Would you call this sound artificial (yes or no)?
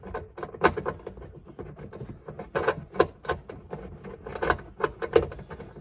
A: no